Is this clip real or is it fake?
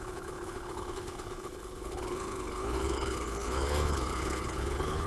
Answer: fake